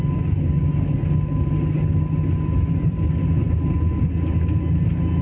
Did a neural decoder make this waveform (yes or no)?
no